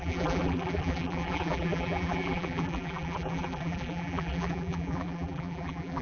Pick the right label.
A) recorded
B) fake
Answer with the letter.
B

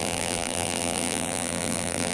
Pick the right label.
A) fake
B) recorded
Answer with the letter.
A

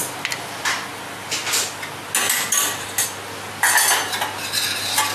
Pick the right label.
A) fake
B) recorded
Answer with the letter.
B